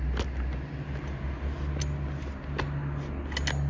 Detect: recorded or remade recorded